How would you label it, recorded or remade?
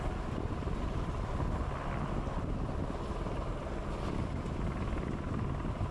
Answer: recorded